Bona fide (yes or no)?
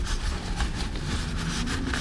yes